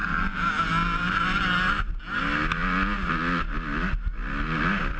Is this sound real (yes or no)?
yes